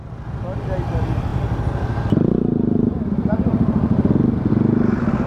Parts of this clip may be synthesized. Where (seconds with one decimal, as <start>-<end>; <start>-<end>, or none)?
none